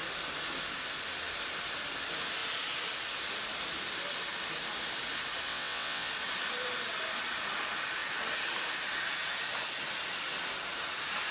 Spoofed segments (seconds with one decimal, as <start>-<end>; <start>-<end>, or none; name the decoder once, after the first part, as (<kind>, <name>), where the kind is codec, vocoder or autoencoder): 5.5-6.1 (vocoder, WaveNeXt)